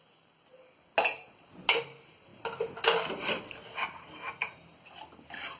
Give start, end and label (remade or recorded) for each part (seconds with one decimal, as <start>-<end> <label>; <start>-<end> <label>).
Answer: 0.0-5.6 recorded